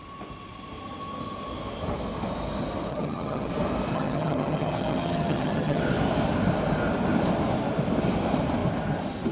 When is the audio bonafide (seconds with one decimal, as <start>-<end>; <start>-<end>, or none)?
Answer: 0.0-2.9; 3.5-3.9; 5.8-9.3